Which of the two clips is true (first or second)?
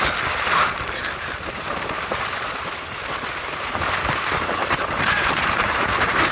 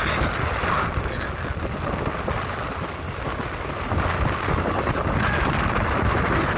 second